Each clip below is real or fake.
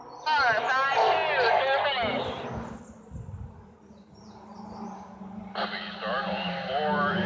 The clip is real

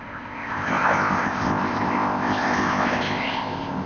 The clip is fake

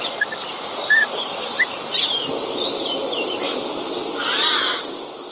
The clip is real